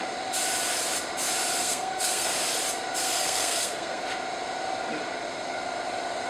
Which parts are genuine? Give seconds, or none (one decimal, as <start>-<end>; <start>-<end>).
0.0-1.6; 2.3-3.0; 4.0-6.3